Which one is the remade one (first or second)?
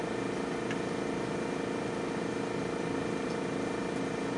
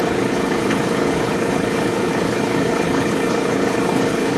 second